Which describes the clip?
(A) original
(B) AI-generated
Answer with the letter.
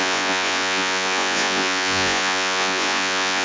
B